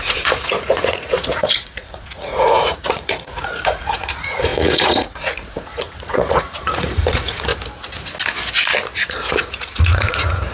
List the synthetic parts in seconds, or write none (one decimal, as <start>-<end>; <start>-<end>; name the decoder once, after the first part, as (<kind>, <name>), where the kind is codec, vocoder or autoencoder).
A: 0.0-7.5 (vocoder, Vocos); 9.4-10.5